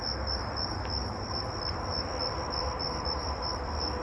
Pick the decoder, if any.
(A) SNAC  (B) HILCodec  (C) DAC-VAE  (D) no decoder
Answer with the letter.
D